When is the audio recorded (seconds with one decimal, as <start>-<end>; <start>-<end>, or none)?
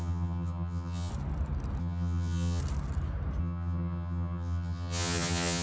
1.1-1.8; 2.6-3.4